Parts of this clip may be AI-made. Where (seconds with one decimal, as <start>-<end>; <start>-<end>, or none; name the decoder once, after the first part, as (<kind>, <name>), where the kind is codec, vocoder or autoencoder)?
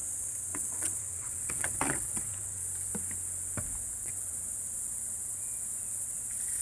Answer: 0.0-2.6 (vocoder, WaveNeXt); 3.9-6.6